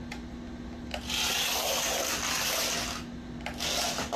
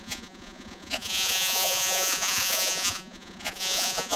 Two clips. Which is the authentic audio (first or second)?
first